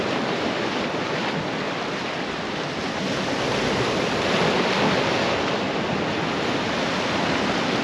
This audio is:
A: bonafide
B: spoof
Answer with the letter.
A